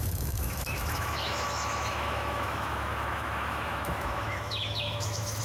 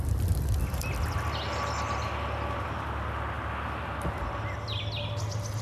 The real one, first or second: second